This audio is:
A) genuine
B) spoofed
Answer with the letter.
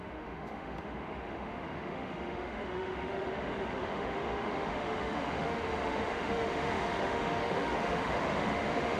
B